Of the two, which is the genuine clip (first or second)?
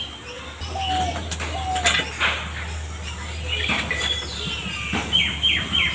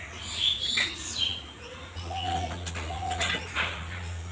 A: first